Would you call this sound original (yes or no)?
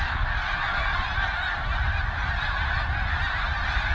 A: yes